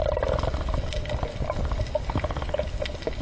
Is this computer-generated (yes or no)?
no